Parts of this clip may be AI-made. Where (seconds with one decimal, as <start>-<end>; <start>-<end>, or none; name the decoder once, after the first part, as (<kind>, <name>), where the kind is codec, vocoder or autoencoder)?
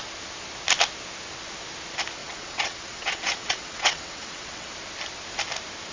2.2-4.7 (vocoder, WaveNeXt)